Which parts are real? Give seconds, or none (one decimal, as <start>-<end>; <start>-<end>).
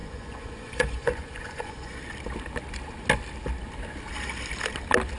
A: 2.0-5.2